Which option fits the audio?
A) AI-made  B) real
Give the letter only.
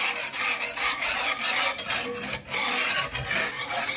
B